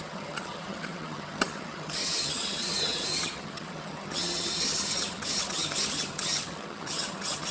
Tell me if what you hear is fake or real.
fake